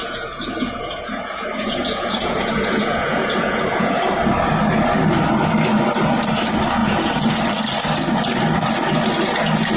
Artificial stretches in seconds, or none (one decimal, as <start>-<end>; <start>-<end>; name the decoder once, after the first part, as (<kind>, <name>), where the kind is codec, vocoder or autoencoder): 0.0-4.0 (vocoder, Vocos); 6.8-7.3